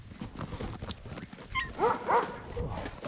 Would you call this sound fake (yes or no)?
no